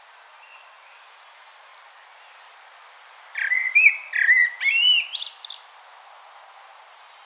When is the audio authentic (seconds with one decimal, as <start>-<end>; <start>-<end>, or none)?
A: 0.0-7.3